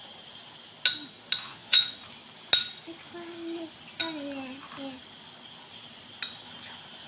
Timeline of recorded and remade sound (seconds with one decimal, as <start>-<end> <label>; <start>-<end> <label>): 0.0-1.4 recorded; 1.4-2.0 remade; 2.0-7.1 recorded